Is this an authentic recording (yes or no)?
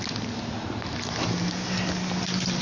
yes